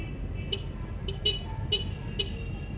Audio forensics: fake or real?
real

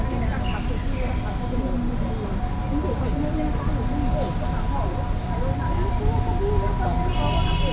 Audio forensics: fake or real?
real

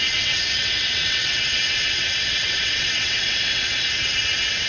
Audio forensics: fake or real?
fake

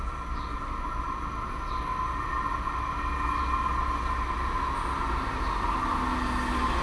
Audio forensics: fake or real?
real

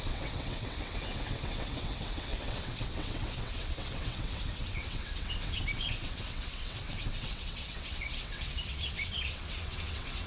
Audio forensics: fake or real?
fake